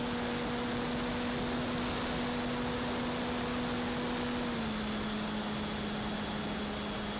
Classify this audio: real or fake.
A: real